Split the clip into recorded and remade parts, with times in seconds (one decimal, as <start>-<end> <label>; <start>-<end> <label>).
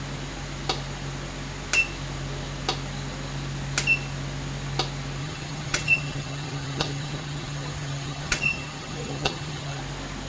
0.0-5.2 recorded; 5.2-9.8 remade; 9.8-10.3 recorded